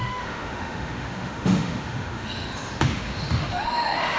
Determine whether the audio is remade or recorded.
remade